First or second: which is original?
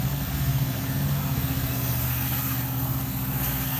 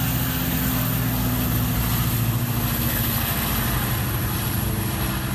second